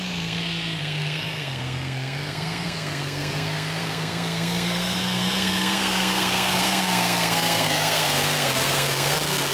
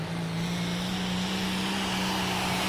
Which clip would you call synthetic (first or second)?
first